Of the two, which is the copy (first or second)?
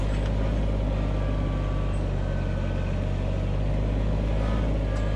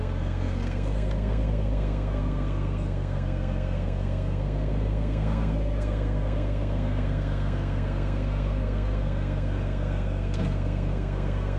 second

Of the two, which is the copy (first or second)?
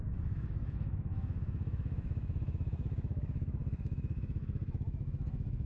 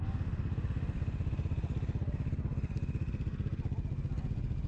first